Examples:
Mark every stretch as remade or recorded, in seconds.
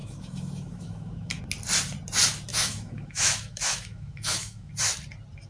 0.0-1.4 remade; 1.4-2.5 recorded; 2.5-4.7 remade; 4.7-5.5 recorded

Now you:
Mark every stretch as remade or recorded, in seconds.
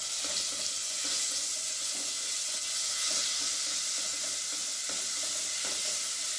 0.0-0.8 recorded; 0.8-3.1 remade; 3.1-6.4 recorded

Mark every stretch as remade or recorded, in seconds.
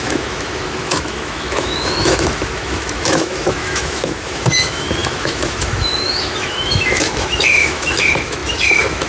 0.0-9.1 remade